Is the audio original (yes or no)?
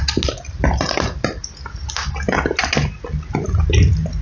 yes